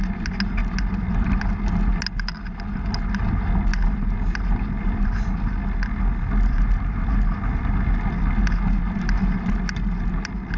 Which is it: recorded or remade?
recorded